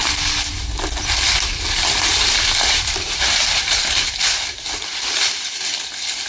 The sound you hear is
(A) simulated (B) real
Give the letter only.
B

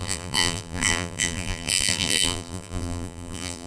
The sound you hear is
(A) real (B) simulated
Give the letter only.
B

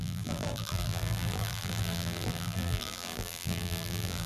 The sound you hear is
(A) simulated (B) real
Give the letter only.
A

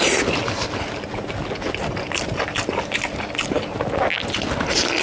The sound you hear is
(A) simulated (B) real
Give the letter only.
B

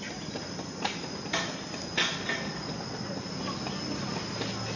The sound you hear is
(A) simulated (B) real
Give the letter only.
B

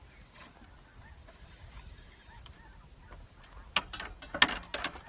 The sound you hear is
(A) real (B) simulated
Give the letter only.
A